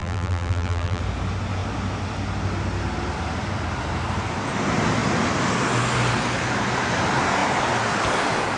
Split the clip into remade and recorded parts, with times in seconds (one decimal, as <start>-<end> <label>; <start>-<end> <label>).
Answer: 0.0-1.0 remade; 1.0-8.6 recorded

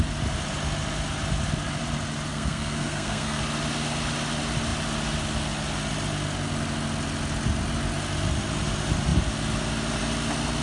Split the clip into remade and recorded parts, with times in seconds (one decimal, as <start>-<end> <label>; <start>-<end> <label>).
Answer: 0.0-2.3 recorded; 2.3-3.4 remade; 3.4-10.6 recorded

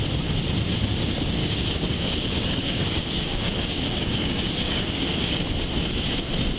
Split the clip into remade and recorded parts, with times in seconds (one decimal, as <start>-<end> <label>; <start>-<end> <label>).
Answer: 0.0-1.4 recorded; 1.4-5.4 remade; 5.4-6.6 recorded

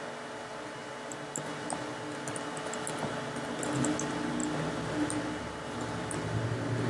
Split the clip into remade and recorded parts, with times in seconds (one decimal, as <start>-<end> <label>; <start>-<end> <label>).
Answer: 0.0-6.9 recorded

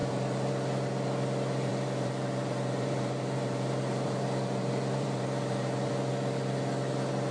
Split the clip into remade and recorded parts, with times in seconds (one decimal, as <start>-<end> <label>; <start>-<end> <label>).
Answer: 0.0-0.5 remade; 0.5-1.7 recorded; 1.7-5.9 remade; 5.9-7.3 recorded

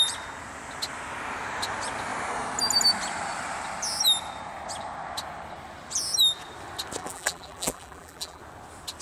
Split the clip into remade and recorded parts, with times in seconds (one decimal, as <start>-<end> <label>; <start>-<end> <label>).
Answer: 0.0-7.0 recorded; 7.0-8.4 remade; 8.4-9.0 recorded

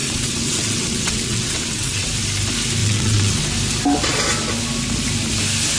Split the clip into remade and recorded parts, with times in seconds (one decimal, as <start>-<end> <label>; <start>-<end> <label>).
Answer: 0.0-2.1 remade; 2.1-2.8 recorded; 2.8-3.4 remade; 3.4-5.8 recorded